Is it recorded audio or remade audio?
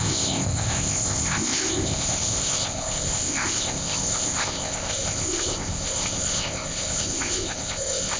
remade